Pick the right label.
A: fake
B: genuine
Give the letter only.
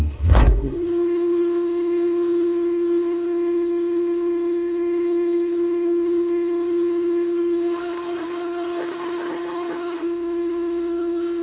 A